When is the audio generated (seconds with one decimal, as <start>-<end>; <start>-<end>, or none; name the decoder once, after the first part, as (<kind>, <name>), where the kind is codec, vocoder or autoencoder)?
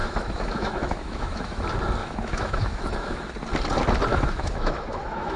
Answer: 0.0-1.6 (autoencoder, DAC-VAE); 2.0-3.3; 4.1-5.4